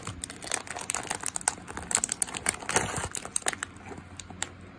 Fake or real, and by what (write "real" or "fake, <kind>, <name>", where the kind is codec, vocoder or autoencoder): real